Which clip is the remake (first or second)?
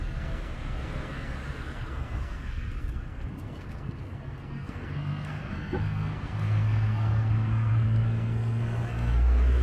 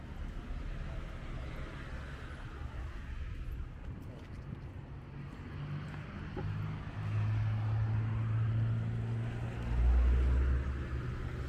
first